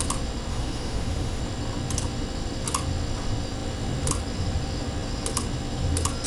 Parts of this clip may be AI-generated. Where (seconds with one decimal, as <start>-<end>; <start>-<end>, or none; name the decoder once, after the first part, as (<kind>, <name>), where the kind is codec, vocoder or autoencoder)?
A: 0.5-1.4 (autoencoder, DAC-VAE)